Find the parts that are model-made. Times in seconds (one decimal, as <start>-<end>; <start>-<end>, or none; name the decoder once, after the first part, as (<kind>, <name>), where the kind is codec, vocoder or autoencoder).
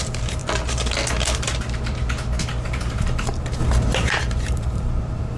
0.0-0.4 (vocoder, BigVGAN v2); 2.6-5.4